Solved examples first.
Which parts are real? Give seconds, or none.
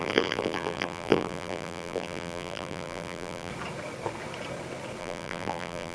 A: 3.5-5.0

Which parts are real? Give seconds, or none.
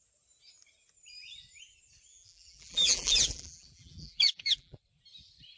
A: 0.0-2.1; 4.8-5.6